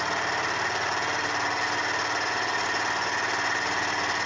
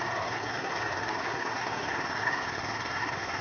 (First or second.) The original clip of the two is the first